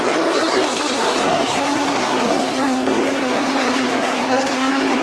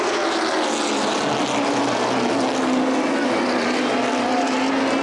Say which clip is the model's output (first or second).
first